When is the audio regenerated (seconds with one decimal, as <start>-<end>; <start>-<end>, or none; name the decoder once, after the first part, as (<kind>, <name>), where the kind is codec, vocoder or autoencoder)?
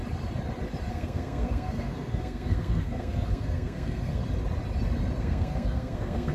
0.9-4.2 (codec, SNAC); 5.2-6.3